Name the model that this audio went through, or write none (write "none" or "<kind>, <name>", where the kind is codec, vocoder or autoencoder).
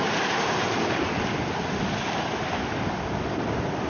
none